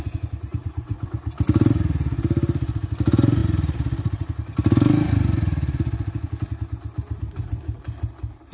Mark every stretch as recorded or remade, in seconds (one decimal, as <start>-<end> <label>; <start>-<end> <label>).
0.0-0.6 recorded; 0.6-1.1 remade; 1.1-8.5 recorded